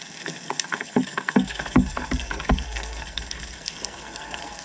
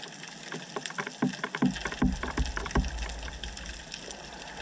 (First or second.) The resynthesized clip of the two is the first